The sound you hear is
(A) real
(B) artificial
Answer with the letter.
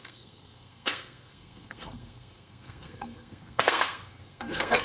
B